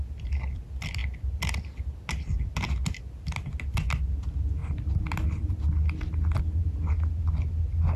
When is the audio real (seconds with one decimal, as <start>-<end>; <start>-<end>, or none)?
0.0-8.0